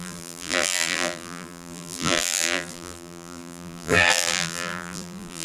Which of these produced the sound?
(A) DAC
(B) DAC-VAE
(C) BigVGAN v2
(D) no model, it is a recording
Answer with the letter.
C